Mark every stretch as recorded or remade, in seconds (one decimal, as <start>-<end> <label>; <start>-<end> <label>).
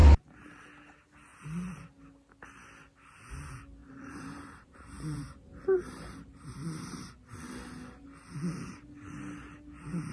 0.0-3.8 recorded; 3.8-7.0 remade; 7.0-10.1 recorded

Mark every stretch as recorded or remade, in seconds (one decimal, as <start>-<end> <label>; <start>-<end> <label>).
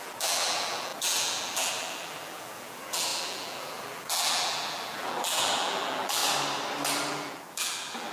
0.0-6.2 remade; 6.2-7.1 recorded; 7.1-8.1 remade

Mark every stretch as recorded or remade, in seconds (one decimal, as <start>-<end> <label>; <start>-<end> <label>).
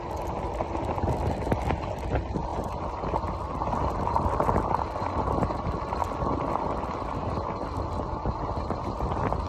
0.0-2.5 recorded; 2.5-3.0 remade; 3.0-9.5 recorded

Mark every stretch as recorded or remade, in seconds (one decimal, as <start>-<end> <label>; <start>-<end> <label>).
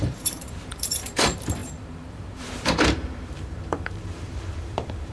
0.0-5.1 remade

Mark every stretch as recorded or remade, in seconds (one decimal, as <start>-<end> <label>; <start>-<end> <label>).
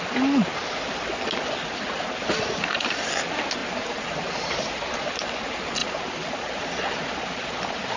0.0-3.6 recorded; 3.6-5.1 remade; 5.1-5.8 recorded; 5.8-6.6 remade; 6.6-8.0 recorded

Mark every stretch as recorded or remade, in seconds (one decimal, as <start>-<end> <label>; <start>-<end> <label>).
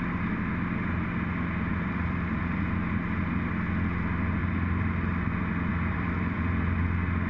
0.0-1.7 recorded; 1.7-2.6 remade; 2.6-4.4 recorded; 4.4-5.3 remade; 5.3-5.7 recorded; 5.7-6.8 remade; 6.8-7.3 recorded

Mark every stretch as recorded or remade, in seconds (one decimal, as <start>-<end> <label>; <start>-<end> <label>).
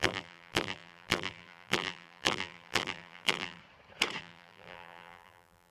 0.0-3.6 remade; 3.6-4.2 recorded; 4.2-5.7 remade